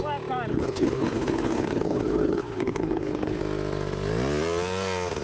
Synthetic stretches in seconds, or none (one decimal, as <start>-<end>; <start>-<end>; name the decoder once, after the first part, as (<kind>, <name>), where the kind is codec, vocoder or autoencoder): 0.5-3.4 (codec, HILCodec)